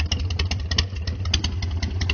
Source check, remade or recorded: recorded